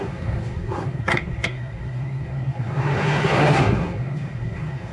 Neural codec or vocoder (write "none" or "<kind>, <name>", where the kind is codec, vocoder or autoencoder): codec, SNAC